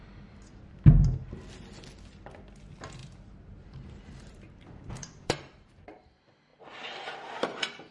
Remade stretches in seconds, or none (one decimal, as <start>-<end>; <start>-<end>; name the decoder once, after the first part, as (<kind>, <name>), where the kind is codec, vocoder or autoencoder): 3.0-6.1 (vocoder, BigVGAN v2)

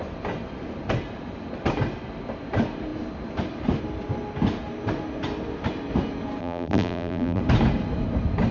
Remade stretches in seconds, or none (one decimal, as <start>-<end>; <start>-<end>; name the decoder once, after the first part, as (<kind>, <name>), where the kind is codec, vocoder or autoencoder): 6.4-7.4 (vocoder, BigVGAN v2)

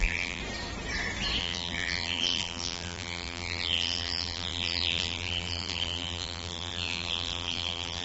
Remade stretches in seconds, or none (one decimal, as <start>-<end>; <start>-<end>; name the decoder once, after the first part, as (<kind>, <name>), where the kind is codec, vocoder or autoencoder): 0.0-0.4 (vocoder, BigVGAN v2); 1.4-8.0

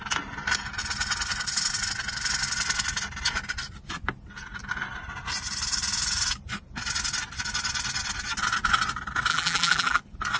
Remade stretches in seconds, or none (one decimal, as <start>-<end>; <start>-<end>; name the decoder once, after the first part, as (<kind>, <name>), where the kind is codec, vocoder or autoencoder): 9.3-10.0 (vocoder, BigVGAN v2)

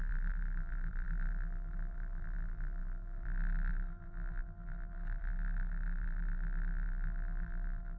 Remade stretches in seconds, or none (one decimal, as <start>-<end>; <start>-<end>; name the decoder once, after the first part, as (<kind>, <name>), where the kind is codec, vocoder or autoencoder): 0.0-8.0 (vocoder, BigVGAN v2)

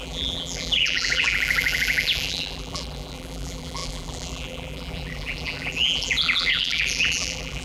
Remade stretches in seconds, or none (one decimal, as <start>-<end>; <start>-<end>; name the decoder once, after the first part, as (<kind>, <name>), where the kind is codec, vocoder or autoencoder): 0.0-7.6 (vocoder, BigVGAN v2)

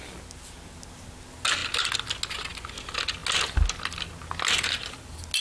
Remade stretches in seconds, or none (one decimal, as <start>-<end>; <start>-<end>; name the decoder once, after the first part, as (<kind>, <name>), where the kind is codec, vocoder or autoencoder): none

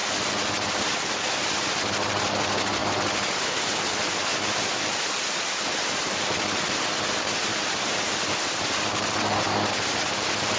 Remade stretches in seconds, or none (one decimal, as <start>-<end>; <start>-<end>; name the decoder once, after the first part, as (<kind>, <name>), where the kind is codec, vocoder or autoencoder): 4.3-6.0 (vocoder, BigVGAN v2); 7.5-9.1